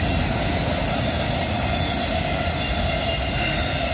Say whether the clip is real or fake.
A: real